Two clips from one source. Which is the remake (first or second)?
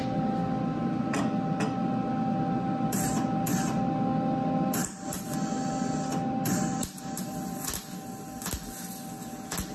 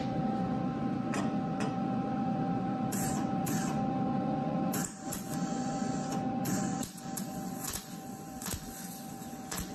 second